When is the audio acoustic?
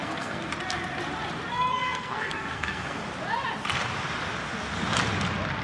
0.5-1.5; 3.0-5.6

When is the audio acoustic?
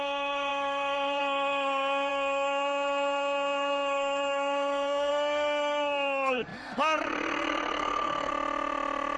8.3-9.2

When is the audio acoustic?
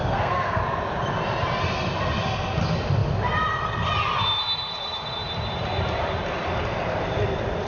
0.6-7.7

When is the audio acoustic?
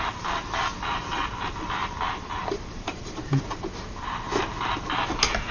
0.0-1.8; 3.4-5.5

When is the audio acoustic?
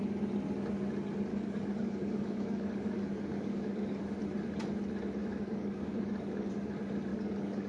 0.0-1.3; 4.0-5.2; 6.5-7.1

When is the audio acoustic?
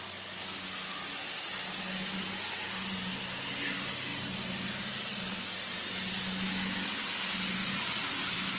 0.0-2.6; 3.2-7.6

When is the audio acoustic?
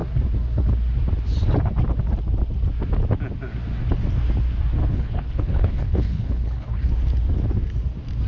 0.0-4.8; 6.9-8.3